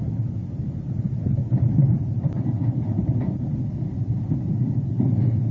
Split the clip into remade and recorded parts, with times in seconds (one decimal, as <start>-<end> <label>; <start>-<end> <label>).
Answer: 0.0-1.8 recorded; 1.8-3.2 remade; 3.2-5.5 recorded